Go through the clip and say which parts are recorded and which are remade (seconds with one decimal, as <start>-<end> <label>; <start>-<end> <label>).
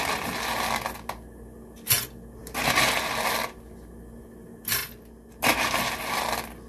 0.0-6.7 recorded